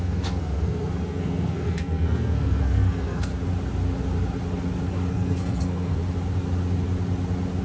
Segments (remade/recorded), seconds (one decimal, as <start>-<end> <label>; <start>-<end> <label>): 0.0-3.3 remade; 3.3-5.1 recorded; 5.1-6.0 remade; 6.0-7.6 recorded